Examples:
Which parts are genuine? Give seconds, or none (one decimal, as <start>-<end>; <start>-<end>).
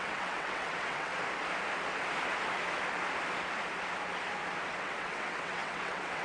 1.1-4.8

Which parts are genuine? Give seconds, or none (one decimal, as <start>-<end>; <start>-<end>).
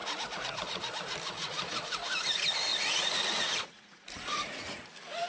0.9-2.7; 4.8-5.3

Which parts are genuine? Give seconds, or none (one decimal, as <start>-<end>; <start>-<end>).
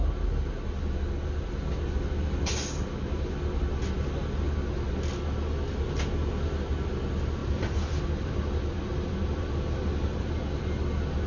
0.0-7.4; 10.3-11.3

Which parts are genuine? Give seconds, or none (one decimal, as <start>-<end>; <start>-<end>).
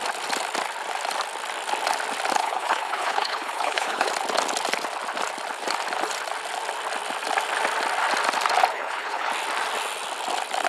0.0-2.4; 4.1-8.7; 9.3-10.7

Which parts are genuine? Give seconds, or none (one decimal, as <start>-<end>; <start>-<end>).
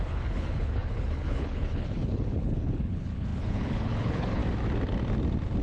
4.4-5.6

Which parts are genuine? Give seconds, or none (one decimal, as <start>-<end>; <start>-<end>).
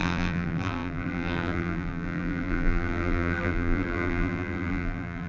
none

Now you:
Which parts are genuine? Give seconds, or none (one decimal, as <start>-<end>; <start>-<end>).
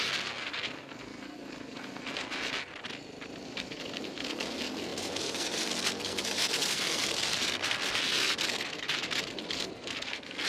2.7-3.4